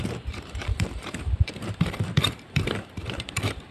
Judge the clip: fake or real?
fake